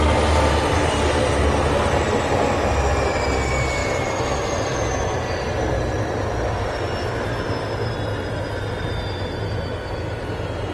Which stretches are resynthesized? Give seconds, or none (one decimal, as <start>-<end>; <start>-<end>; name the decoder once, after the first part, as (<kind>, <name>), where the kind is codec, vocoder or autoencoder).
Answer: none